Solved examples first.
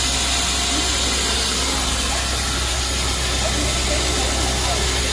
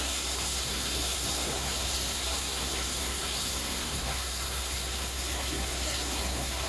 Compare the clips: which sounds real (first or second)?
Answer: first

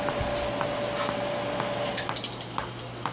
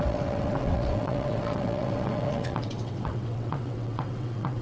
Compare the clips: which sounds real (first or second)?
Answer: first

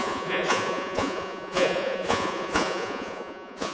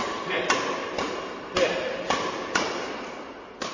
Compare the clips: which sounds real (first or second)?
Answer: second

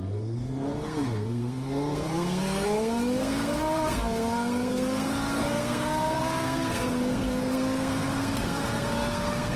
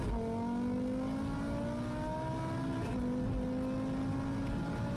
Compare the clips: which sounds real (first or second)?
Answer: second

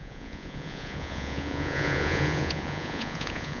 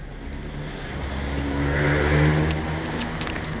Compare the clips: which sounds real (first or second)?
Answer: second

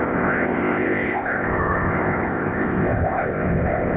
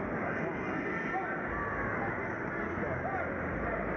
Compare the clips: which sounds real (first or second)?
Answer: second